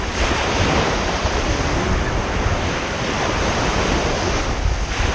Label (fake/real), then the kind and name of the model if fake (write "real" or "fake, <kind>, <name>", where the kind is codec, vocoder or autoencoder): real